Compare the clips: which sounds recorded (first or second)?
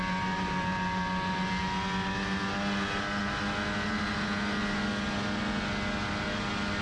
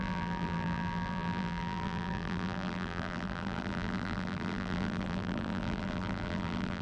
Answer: first